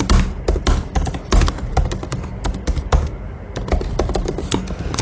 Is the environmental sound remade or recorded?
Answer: recorded